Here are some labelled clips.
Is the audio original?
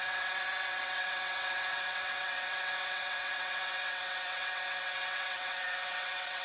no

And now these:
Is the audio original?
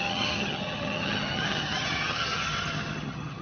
no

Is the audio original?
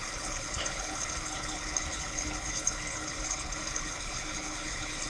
no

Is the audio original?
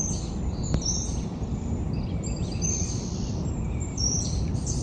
no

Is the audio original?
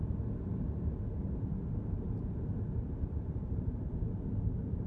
yes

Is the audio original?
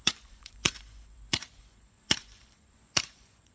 no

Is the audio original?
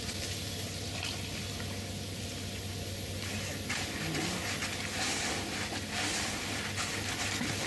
yes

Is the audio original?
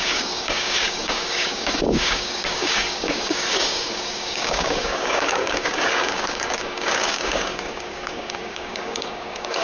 no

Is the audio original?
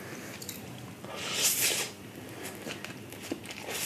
yes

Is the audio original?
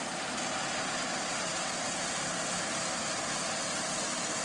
yes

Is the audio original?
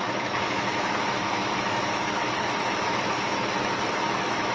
no